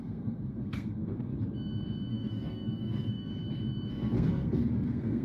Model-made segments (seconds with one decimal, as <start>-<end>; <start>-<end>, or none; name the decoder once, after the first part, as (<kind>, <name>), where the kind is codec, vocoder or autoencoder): 0.0-1.3 (codec, SNAC); 2.1-3.3; 3.9-5.2